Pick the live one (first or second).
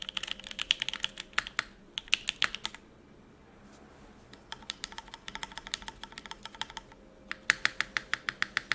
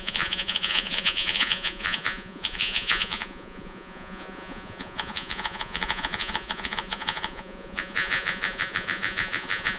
first